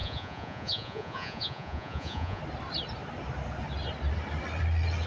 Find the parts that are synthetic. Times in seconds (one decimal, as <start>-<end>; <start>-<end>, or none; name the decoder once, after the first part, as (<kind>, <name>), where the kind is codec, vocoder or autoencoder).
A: 0.0-2.4 (vocoder, Vocos)